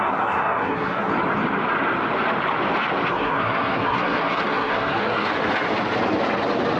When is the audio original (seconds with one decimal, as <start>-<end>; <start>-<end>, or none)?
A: 1.1-3.1; 5.3-6.8